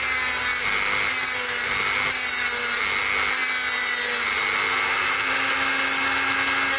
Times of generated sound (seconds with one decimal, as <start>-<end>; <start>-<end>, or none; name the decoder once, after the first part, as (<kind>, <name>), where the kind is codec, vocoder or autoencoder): none